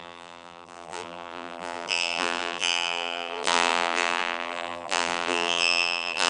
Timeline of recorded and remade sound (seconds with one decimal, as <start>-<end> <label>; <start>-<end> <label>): 0.0-6.3 remade